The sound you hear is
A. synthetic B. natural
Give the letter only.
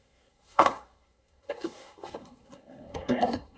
A